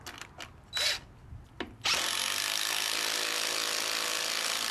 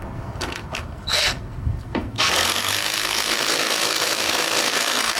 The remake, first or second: second